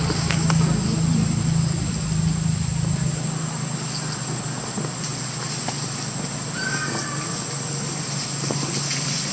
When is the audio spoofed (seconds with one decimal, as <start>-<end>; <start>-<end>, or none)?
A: none